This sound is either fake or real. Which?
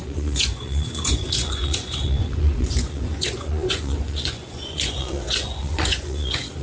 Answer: fake